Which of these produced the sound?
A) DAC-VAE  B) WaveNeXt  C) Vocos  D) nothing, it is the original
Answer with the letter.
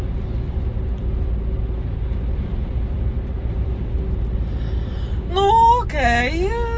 D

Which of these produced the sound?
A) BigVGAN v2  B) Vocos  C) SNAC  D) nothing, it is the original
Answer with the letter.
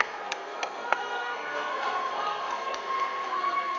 C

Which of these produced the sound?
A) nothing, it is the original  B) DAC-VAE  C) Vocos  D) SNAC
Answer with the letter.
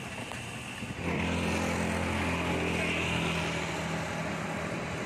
A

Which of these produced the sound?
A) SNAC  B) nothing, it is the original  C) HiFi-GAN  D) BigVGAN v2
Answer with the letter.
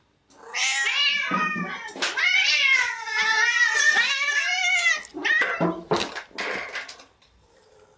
B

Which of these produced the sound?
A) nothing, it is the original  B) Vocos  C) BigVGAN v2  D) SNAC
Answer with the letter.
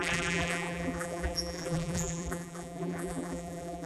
C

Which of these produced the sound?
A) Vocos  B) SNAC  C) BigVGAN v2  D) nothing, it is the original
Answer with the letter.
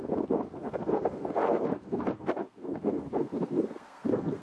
B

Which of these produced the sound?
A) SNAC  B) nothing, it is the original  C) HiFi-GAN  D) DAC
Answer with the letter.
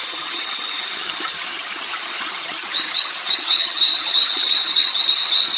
C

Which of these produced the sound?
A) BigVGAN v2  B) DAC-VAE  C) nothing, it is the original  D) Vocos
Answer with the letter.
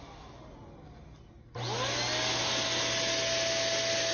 C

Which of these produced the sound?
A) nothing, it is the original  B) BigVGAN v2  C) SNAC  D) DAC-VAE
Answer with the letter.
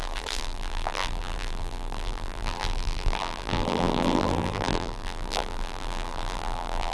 B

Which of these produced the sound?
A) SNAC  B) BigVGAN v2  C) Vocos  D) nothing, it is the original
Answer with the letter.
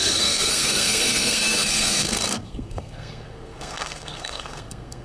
A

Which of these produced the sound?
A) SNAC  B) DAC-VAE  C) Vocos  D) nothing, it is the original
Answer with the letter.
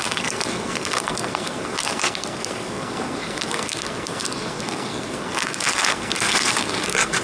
A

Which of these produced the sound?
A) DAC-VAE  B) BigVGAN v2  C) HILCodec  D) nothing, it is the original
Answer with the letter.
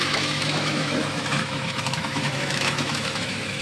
A